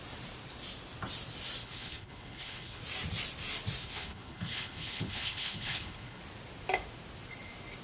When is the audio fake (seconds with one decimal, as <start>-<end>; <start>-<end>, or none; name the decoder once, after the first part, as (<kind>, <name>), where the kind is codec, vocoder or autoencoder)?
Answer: 1.6-2.8 (codec, HILCodec); 3.8-6.2